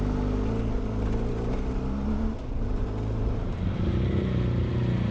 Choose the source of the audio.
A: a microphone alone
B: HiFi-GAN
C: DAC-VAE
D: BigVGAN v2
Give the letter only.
A